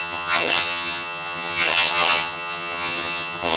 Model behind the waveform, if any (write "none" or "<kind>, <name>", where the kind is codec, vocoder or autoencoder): vocoder, HiFi-GAN